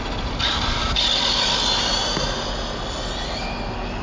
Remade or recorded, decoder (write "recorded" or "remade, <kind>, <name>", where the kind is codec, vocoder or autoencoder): recorded